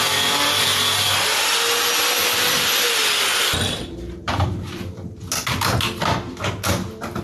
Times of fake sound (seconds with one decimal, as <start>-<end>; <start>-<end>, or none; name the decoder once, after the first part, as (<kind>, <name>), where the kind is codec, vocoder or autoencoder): 3.3-5.3 (vocoder, BigVGAN v2)